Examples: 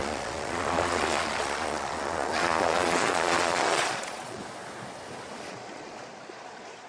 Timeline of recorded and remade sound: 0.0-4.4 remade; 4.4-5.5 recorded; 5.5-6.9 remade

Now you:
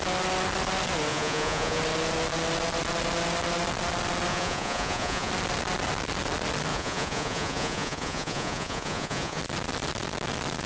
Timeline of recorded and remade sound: 0.0-1.1 recorded; 1.1-1.8 remade; 1.8-4.3 recorded; 4.3-5.3 remade; 5.3-6.7 recorded; 6.7-9.4 remade; 9.4-10.7 recorded

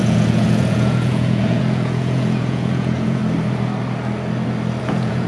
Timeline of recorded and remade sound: 0.0-3.2 remade; 3.2-4.8 recorded; 4.8-5.3 remade

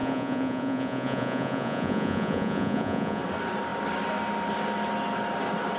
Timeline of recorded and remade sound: 0.0-3.2 remade; 3.2-5.8 recorded

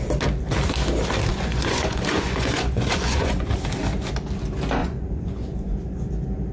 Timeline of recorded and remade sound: 0.0-1.3 recorded; 1.3-3.5 remade; 3.5-4.8 recorded; 4.8-6.1 remade; 6.1-6.5 recorded